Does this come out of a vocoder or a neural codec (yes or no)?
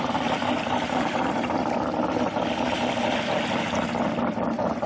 no